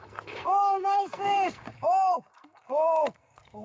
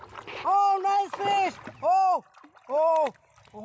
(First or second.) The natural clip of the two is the second